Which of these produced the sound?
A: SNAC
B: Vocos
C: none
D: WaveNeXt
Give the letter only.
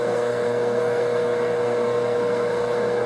A